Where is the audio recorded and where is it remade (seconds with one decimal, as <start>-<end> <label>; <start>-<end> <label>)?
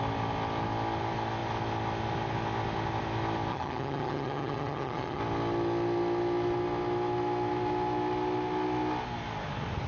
0.0-3.5 recorded; 3.5-5.2 remade; 5.2-9.9 recorded